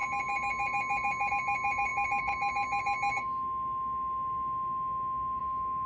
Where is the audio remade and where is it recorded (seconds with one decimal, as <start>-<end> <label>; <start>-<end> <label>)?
0.0-5.9 recorded